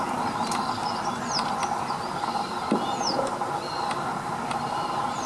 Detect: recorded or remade recorded